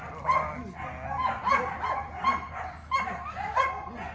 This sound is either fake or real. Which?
real